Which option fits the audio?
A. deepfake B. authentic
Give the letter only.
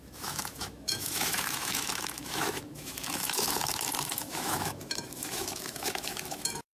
A